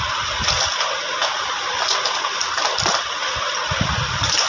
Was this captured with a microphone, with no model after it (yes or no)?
yes